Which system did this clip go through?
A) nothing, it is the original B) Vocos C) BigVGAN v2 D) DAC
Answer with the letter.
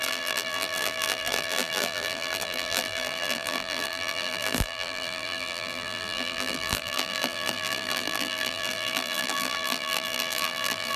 C